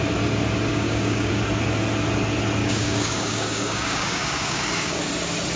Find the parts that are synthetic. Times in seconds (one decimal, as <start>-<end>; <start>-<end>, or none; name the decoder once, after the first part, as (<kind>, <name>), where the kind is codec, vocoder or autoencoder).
0.7-1.3 (codec, DAC); 2.6-5.0